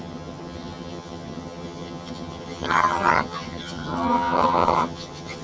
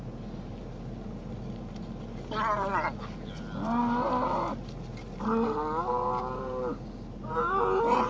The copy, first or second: first